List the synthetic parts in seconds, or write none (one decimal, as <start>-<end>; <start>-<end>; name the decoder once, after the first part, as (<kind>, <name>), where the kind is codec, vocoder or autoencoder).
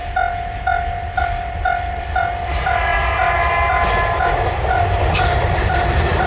1.2-2.9 (vocoder, BigVGAN v2); 4.8-6.3